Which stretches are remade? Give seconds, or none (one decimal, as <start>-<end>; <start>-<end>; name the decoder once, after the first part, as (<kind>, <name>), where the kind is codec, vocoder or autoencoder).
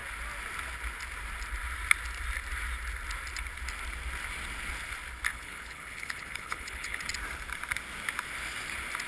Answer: 5.3-7.0 (codec, HILCodec)